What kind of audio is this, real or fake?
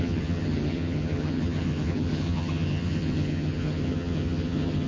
fake